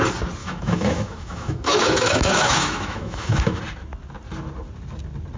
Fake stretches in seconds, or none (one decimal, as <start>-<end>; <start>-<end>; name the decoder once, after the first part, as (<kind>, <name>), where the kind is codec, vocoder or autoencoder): 0.4-3.6 (autoencoder, DAC-VAE)